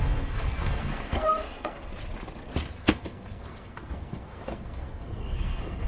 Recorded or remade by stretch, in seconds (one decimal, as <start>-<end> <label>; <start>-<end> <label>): 0.0-1.9 remade; 1.9-2.7 recorded; 2.7-5.9 remade